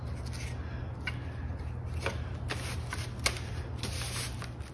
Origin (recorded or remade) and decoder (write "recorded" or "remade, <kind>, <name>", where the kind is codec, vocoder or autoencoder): recorded